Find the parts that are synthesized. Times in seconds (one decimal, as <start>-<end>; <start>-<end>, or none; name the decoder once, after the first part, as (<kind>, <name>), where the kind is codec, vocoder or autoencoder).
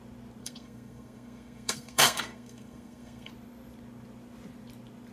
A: 0.4-3.3 (codec, SNAC)